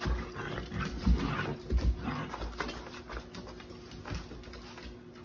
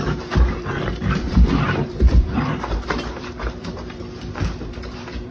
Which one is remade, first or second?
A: second